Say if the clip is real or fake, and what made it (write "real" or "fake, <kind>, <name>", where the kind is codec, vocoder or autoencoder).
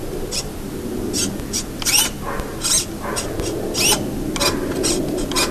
real